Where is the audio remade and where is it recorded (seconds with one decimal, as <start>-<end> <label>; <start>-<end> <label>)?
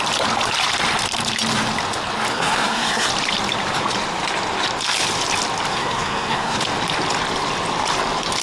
0.0-2.3 recorded; 2.3-3.1 remade; 3.1-5.7 recorded; 5.7-6.6 remade; 6.6-8.4 recorded